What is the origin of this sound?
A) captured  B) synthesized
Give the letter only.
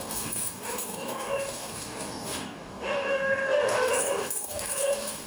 B